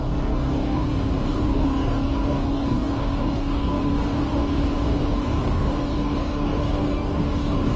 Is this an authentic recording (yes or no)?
no